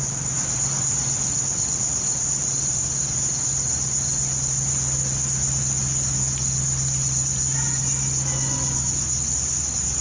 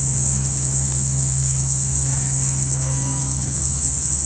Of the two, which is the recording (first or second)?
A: first